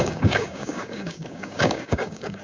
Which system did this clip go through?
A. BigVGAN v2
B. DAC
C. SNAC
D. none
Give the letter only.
B